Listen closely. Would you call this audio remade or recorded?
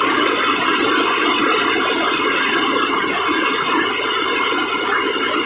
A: recorded